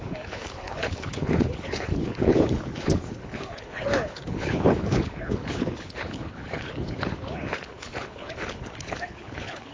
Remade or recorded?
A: remade